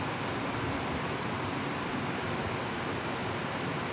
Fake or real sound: real